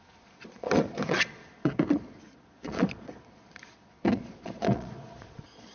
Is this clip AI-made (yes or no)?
yes